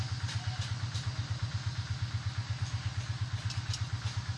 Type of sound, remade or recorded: recorded